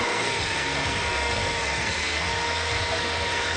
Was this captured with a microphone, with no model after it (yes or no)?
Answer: no